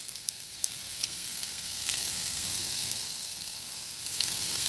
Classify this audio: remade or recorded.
remade